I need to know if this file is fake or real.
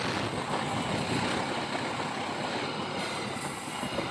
real